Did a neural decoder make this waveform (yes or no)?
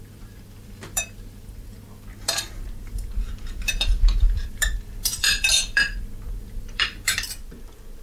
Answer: yes